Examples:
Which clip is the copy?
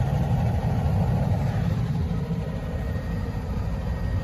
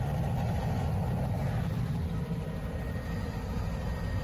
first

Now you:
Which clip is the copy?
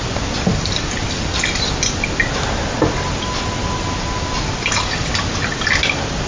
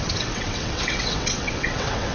second